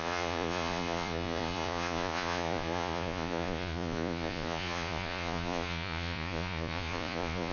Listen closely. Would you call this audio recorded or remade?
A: remade